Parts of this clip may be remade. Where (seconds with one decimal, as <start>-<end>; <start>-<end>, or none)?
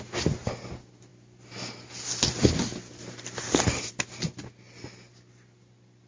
none